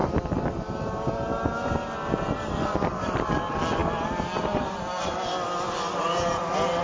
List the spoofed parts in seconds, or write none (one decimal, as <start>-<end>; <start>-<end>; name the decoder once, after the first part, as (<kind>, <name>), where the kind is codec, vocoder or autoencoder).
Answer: none